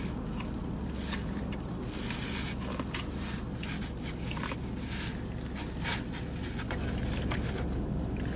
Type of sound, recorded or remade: recorded